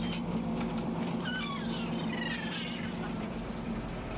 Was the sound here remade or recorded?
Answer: remade